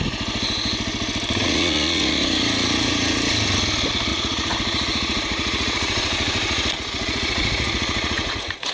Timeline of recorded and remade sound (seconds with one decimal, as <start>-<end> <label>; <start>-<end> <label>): 0.0-1.4 recorded; 1.4-3.2 remade; 3.2-4.1 recorded; 4.1-8.7 remade